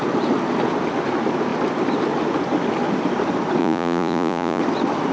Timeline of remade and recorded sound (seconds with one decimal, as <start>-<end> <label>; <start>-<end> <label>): 0.0-3.6 recorded; 3.6-4.6 remade; 4.6-5.1 recorded